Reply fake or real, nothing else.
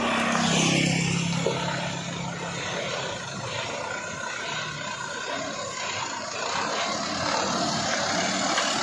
real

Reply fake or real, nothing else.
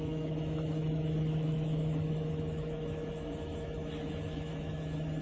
fake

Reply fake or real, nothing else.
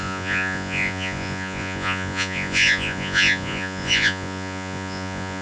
fake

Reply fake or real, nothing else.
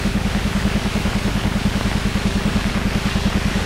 fake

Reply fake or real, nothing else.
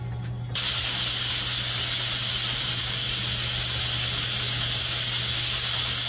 real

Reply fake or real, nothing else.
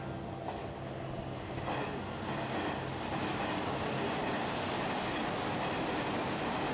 real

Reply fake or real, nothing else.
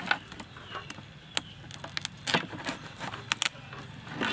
real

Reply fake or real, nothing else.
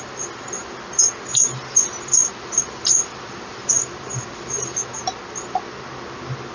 real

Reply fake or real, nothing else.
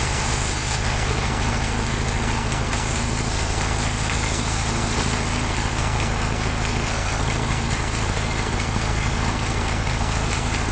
fake